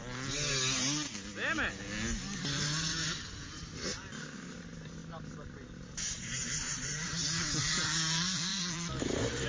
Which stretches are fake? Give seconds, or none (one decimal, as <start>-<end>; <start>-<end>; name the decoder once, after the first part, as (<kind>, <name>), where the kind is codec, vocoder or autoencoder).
2.4-5.0 (vocoder, BigVGAN v2); 6.1-9.5